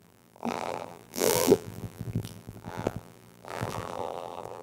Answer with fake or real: fake